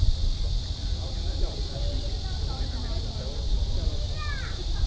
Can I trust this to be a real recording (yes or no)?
yes